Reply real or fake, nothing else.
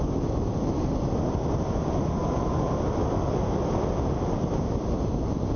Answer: real